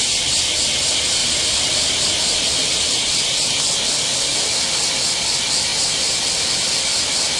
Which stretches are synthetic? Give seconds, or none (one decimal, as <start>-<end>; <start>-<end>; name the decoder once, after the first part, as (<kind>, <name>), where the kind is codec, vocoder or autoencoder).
1.2-2.1 (vocoder, BigVGAN v2)